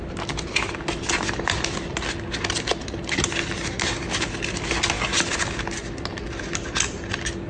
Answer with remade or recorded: recorded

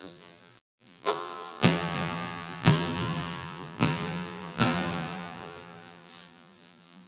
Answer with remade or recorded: remade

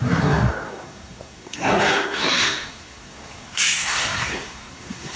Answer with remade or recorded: remade